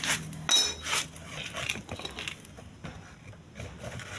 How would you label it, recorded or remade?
recorded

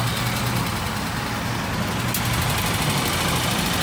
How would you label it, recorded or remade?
recorded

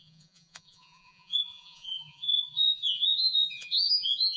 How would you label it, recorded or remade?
remade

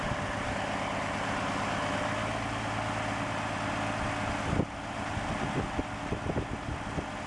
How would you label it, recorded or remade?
recorded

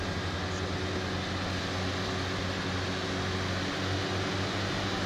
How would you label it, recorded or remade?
recorded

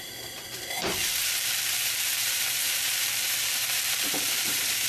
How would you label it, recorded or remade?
remade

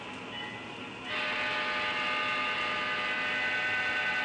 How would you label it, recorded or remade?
recorded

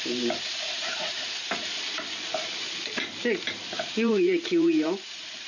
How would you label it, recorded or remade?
remade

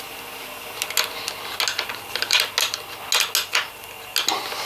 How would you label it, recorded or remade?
recorded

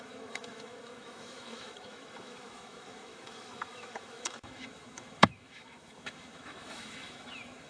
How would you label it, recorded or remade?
remade